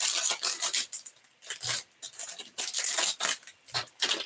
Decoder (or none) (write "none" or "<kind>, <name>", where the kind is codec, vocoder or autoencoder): vocoder, BigVGAN v2